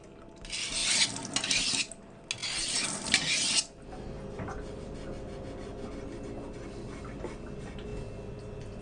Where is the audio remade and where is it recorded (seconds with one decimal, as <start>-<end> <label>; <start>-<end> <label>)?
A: 0.0-8.8 recorded